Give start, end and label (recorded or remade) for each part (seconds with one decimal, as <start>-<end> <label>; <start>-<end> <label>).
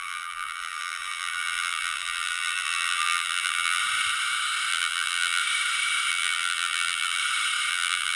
0.0-3.8 remade; 3.8-4.7 recorded; 4.7-5.4 remade; 5.4-6.1 recorded; 6.1-7.2 remade; 7.2-7.7 recorded; 7.7-8.2 remade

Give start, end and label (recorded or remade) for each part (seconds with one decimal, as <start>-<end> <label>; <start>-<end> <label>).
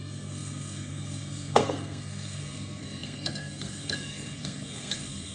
0.0-5.3 remade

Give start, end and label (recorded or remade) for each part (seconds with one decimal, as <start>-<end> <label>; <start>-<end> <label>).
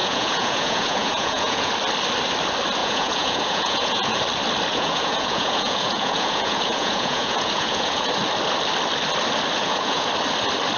0.0-1.7 remade; 1.7-2.8 recorded; 2.8-4.2 remade; 4.2-4.7 recorded; 4.7-8.1 remade; 8.1-9.6 recorded; 9.6-10.1 remade; 10.1-10.8 recorded